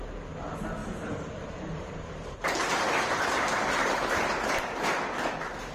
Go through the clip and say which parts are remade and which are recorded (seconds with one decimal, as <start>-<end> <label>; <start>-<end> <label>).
0.0-0.8 recorded; 0.8-3.2 remade; 3.2-3.8 recorded; 3.8-4.5 remade; 4.5-5.7 recorded